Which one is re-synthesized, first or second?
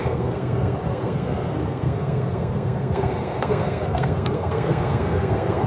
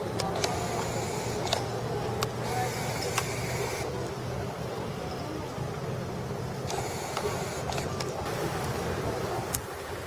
first